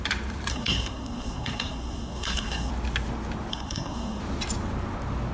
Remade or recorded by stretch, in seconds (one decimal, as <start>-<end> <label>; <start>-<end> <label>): 0.0-0.5 recorded; 0.5-2.7 remade; 2.7-3.5 recorded; 3.5-4.2 remade; 4.2-5.3 recorded